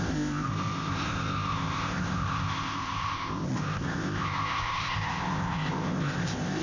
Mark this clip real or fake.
fake